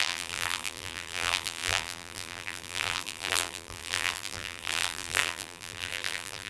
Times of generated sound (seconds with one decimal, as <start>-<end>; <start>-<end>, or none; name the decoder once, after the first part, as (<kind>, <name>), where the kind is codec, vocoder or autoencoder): 0.0-6.5 (vocoder, BigVGAN v2)